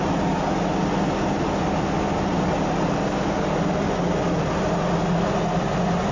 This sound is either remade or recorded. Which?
recorded